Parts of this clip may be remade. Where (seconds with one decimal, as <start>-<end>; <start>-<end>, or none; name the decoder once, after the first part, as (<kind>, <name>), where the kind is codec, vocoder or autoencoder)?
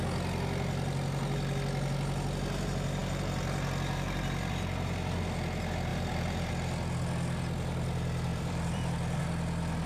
5.9-6.5 (vocoder, BigVGAN v2); 8.3-8.9